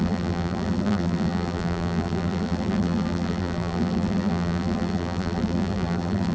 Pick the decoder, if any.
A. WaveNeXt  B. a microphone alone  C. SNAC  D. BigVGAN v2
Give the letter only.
D